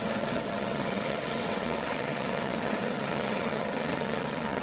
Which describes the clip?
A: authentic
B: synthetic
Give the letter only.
B